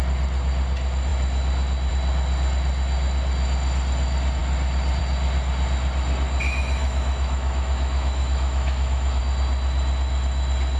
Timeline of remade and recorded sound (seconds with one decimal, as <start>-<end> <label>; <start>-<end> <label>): 0.0-6.8 recorded; 6.8-9.2 remade; 9.2-10.8 recorded